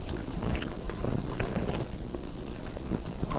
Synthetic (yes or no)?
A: yes